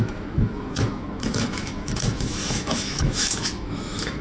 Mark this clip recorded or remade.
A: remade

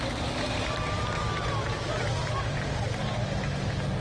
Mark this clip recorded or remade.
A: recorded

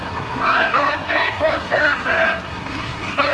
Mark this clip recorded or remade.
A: remade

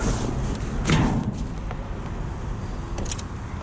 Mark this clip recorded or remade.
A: recorded